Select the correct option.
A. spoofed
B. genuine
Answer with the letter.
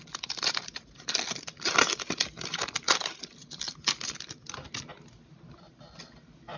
B